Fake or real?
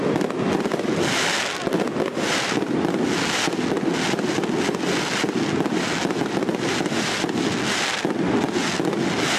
real